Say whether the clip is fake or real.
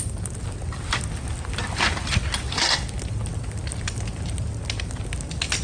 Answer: real